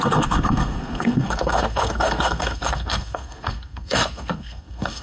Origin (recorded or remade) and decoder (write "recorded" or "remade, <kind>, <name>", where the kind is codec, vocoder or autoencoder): remade, codec, SNAC